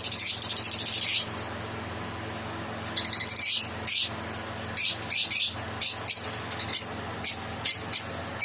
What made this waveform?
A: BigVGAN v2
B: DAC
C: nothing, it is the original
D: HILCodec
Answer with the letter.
C